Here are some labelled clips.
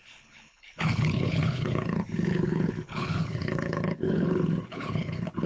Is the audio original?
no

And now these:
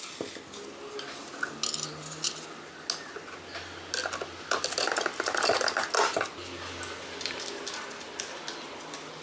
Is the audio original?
yes